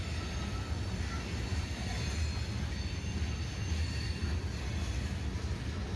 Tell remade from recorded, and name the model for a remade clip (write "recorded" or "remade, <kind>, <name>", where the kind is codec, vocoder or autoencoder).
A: recorded